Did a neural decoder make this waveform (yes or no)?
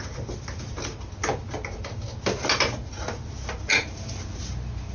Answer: no